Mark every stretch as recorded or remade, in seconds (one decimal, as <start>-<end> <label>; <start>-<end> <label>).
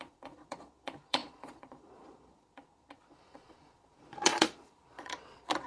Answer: 0.0-5.7 remade